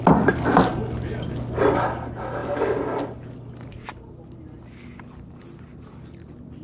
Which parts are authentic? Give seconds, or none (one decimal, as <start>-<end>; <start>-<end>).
0.0-6.6